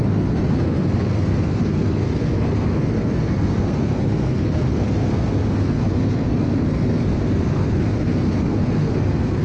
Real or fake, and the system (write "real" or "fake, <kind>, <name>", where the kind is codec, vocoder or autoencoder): fake, codec, SNAC